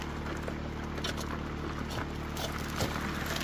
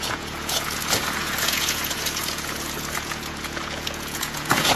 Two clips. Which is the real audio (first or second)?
first